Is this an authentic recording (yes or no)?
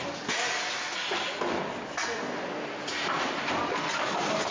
yes